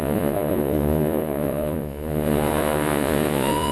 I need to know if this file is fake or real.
fake